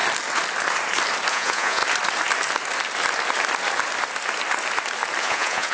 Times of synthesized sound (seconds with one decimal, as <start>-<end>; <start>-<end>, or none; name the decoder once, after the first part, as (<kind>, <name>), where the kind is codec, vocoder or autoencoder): 1.3-1.8 (vocoder, Vocos); 5.2-5.7